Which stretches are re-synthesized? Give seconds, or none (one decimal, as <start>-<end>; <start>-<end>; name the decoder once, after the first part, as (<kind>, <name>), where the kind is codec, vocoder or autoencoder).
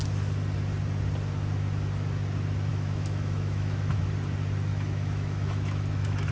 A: 2.7-4.0 (autoencoder, DAC-VAE); 4.7-6.3